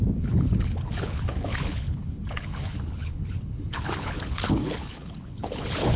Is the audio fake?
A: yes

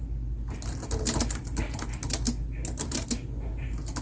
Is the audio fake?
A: no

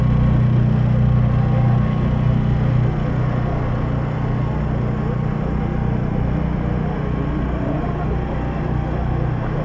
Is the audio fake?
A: no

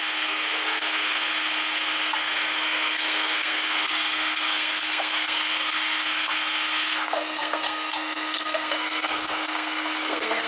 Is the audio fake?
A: yes